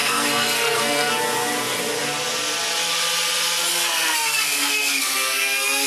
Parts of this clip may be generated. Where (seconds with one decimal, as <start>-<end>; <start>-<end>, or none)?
0.0-1.1; 3.7-5.9